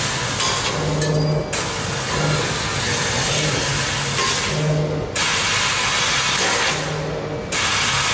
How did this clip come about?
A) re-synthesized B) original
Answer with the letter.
B